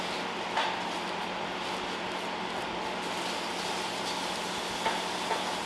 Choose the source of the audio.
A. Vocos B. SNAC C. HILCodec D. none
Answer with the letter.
D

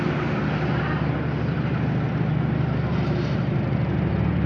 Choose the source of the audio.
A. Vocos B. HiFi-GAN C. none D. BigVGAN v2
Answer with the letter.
C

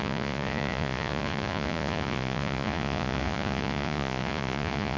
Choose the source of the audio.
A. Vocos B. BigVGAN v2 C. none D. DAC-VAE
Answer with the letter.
A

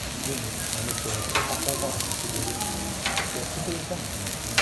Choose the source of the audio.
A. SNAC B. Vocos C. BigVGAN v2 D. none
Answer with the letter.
D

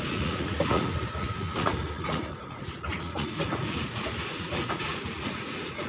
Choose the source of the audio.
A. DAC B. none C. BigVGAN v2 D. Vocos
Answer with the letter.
D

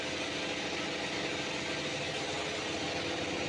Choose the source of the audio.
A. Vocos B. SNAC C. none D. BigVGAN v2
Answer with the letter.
C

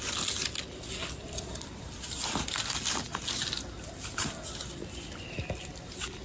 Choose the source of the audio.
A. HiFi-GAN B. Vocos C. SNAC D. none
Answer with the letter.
D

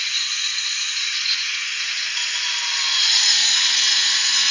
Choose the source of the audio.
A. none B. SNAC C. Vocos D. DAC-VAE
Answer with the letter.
C